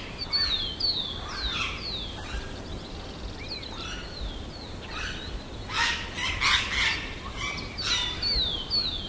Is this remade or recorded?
recorded